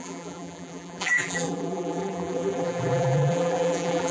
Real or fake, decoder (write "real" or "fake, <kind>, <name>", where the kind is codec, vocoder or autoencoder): fake, vocoder, BigVGAN v2